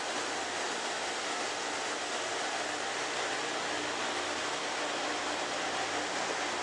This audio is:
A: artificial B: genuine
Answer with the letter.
B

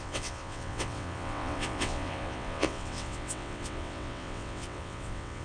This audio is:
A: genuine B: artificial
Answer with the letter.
B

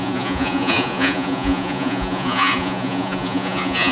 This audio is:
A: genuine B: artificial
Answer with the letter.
B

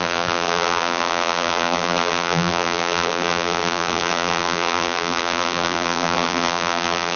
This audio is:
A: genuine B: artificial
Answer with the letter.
B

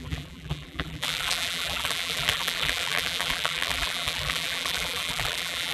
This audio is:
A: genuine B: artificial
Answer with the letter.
B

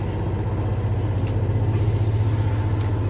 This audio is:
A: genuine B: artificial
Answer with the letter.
A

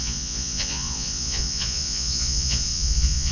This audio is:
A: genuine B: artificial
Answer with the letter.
B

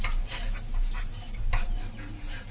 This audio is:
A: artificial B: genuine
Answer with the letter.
A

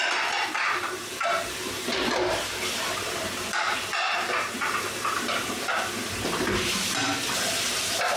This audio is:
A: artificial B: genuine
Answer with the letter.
A